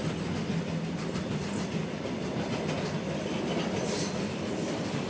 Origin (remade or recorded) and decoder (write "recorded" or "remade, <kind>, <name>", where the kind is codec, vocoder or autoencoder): recorded